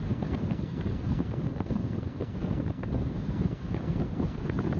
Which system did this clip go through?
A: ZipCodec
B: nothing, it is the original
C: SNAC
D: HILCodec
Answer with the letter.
C